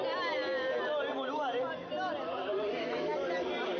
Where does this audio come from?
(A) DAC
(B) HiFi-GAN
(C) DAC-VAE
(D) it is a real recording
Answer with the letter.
D